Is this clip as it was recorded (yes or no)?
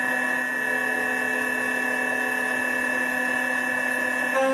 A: yes